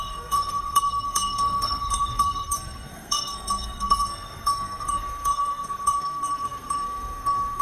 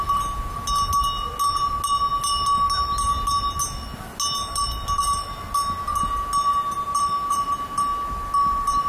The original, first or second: second